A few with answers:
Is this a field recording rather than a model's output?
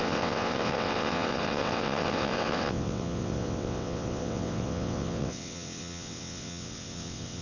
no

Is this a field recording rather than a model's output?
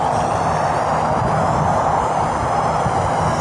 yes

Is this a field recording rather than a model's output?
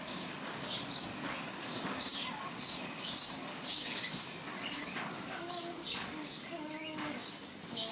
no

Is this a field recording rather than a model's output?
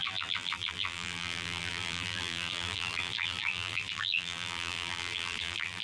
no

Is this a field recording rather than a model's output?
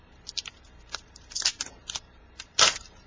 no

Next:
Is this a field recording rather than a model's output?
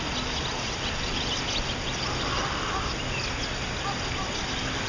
yes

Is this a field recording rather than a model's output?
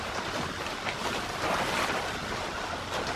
yes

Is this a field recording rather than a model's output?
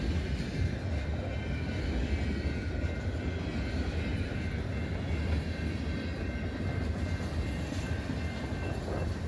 yes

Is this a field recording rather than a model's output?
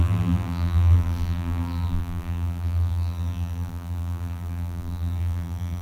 no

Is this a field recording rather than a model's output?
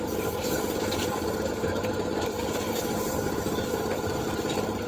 no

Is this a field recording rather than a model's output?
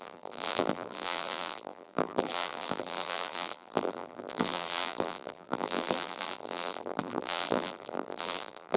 no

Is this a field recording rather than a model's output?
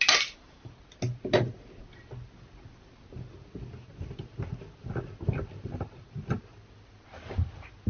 yes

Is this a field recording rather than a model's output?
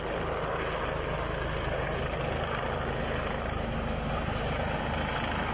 yes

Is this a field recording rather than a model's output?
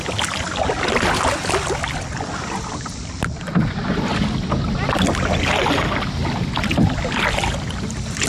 yes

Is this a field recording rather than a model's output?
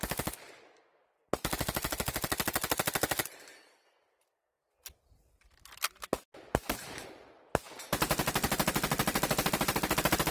yes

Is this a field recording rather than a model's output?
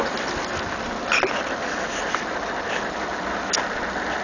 yes